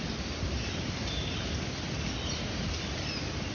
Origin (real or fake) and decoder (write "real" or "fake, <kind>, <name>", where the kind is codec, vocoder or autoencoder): real